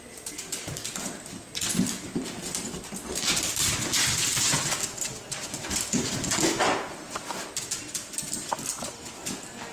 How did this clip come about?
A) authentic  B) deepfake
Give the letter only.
A